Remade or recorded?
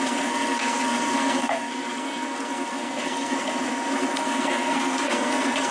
remade